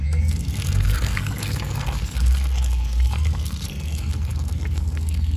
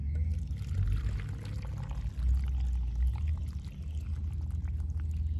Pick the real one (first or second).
second